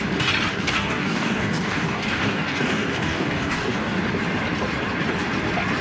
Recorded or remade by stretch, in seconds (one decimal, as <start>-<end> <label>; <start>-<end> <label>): 0.0-0.5 recorded; 0.5-4.0 remade; 4.0-5.8 recorded